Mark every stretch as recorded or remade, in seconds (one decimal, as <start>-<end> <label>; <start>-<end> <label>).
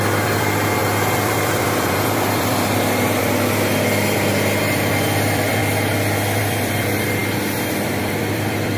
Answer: 0.0-5.6 remade; 5.6-6.4 recorded; 6.4-8.8 remade